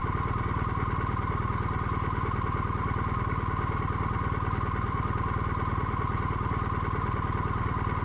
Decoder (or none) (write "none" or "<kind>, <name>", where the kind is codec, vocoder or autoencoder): none